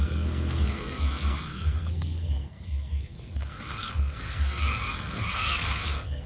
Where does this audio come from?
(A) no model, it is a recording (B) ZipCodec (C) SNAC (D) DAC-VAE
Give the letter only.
C